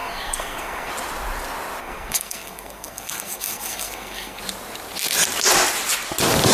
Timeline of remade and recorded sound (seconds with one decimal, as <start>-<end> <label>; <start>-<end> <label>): 0.0-0.9 remade; 0.9-1.8 recorded; 1.8-4.4 remade; 4.4-6.5 recorded